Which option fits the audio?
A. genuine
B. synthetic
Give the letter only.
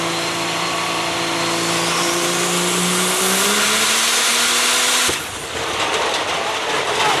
A